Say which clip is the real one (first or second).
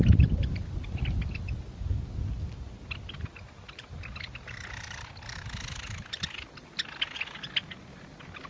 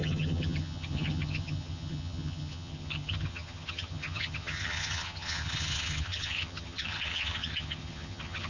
first